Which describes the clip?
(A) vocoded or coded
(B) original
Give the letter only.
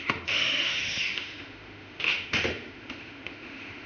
A